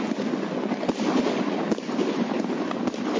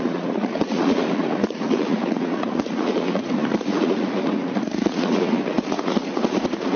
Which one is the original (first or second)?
first